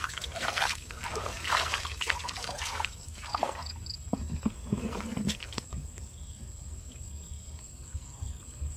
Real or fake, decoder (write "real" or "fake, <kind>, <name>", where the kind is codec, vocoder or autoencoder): fake, codec, SNAC